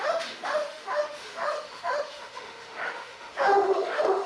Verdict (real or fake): fake